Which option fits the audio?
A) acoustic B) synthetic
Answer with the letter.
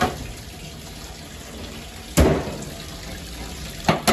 A